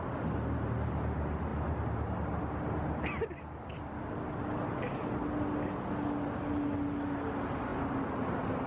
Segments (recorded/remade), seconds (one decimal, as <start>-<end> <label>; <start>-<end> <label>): 0.0-8.7 recorded